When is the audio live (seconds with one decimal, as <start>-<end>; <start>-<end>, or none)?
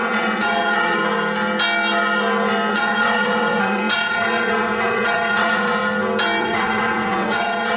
1.0-2.7; 5.8-6.4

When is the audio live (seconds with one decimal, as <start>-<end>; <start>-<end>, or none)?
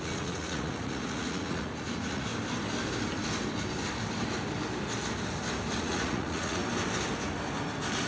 2.3-5.8; 6.6-8.1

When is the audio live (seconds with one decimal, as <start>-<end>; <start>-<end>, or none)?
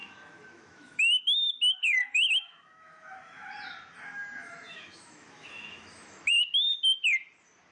3.5-4.4; 6.3-7.7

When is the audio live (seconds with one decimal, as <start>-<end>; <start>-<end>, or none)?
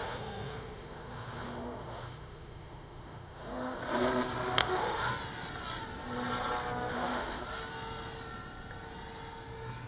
3.8-4.6; 5.1-6.9; 7.4-9.9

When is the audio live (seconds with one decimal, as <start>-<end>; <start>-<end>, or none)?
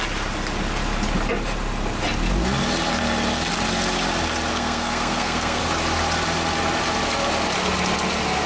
0.0-4.5; 5.6-8.5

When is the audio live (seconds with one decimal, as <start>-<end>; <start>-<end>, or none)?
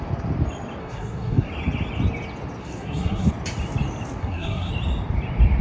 0.0-0.8; 1.5-2.6; 3.3-4.2; 4.7-5.6